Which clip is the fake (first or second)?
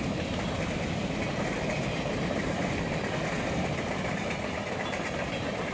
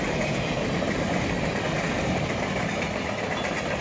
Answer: first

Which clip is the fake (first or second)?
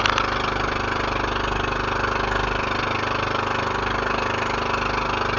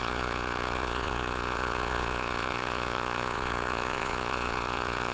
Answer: second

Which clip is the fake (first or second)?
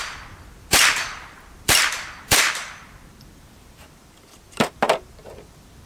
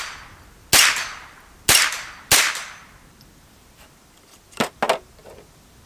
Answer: first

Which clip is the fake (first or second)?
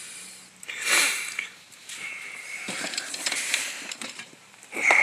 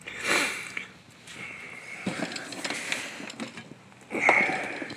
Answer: first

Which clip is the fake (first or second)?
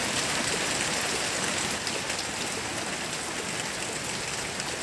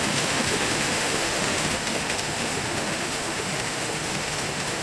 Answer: second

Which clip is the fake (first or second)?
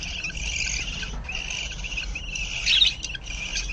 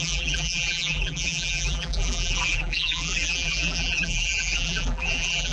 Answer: second